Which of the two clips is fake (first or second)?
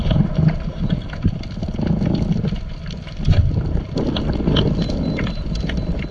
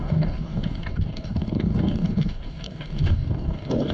second